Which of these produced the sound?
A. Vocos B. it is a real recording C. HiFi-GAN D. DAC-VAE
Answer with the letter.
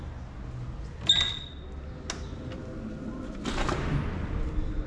B